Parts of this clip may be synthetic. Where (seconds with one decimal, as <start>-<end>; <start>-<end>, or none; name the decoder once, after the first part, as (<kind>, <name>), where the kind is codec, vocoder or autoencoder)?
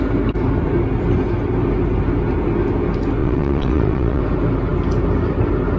3.2-4.2 (vocoder, WaveNeXt)